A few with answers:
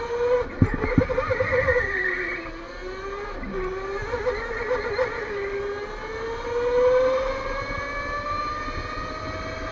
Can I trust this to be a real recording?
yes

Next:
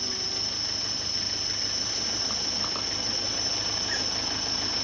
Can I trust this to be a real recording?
yes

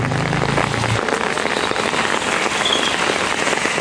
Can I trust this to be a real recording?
yes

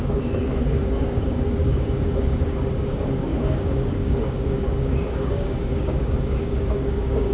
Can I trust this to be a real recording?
no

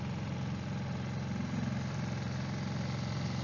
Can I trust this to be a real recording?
yes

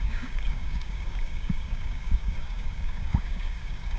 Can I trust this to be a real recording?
no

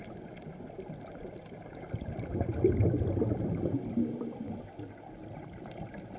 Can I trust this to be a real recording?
yes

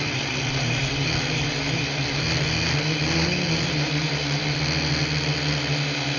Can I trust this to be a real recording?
yes